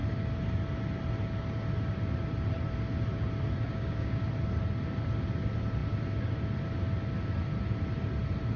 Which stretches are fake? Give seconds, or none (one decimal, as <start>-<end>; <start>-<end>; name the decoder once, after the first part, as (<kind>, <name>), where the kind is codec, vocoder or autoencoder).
3.7-4.3 (codec, DAC)